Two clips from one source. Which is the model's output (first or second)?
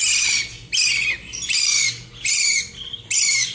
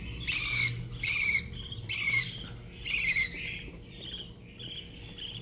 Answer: second